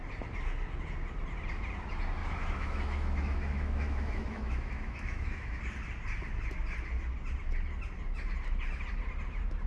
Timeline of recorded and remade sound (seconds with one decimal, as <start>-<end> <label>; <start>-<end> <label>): 0.0-2.2 recorded; 2.2-5.6 remade; 5.6-9.7 recorded